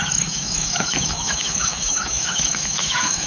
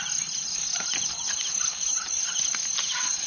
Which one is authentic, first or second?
second